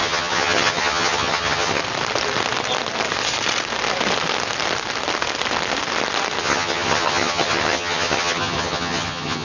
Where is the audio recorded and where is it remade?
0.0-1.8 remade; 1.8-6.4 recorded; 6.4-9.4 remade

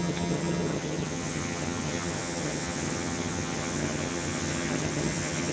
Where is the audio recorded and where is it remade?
0.0-5.5 remade

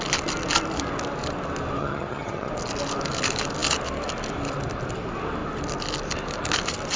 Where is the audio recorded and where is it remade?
0.0-1.8 recorded; 1.8-2.5 remade; 2.5-7.0 recorded

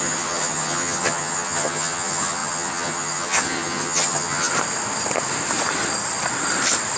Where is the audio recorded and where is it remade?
0.0-4.5 remade; 4.5-7.0 recorded

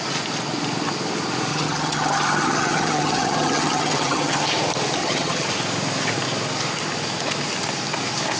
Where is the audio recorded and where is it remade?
0.0-1.5 recorded; 1.5-4.4 remade; 4.4-5.0 recorded; 5.0-5.5 remade; 5.5-8.4 recorded

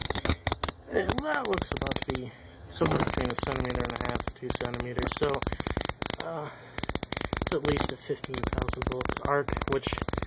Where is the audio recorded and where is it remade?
0.0-1.1 remade; 1.1-2.4 recorded; 2.4-3.1 remade; 3.1-10.3 recorded

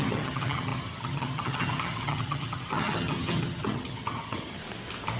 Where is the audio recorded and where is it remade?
0.0-4.6 remade; 4.6-5.2 recorded